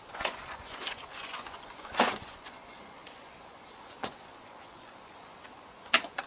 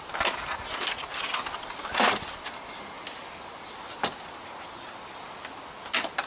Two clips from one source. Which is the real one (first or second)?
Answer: second